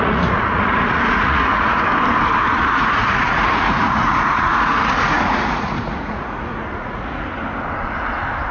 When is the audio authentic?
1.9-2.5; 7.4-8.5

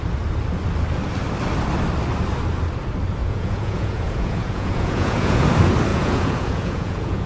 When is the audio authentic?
0.0-3.2; 5.5-5.9

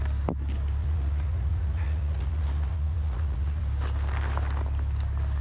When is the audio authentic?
0.0-0.8; 3.6-5.4